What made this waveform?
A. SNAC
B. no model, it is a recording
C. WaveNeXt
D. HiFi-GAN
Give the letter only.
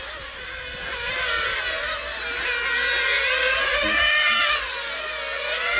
B